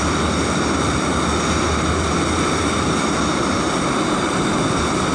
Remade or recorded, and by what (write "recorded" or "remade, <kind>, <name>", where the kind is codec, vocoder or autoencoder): recorded